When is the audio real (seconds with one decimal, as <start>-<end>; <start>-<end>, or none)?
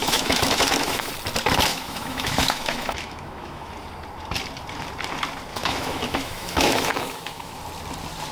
1.1-1.7; 3.7-5.5; 7.6-8.3